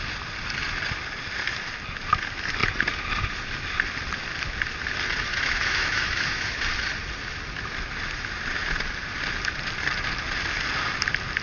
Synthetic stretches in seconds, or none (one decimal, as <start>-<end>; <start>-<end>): 5.3-6.6